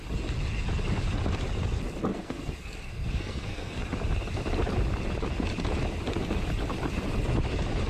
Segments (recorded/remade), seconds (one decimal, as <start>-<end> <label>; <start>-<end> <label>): 0.0-2.1 recorded; 2.1-3.8 remade; 3.8-7.9 recorded